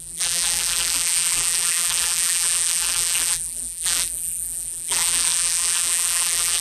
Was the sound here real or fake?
fake